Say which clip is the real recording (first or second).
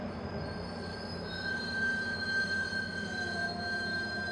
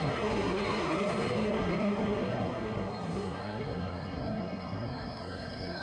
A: first